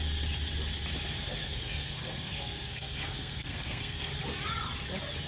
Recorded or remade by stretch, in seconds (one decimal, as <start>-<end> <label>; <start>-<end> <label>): 0.0-1.4 recorded; 1.4-4.1 remade; 4.1-5.3 recorded